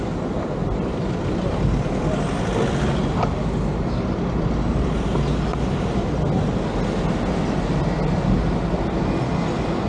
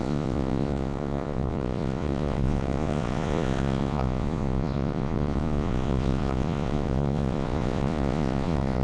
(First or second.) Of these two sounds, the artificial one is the second